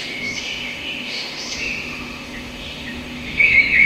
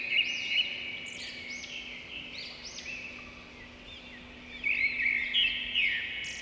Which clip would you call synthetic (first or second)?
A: first